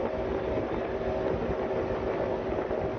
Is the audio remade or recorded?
recorded